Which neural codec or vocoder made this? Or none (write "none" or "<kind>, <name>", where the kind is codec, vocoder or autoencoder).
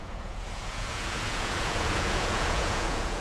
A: vocoder, Vocos